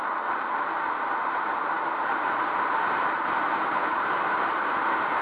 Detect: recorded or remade remade